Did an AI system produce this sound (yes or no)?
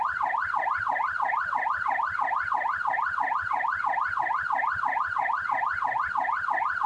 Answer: no